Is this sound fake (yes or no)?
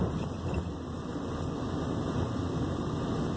no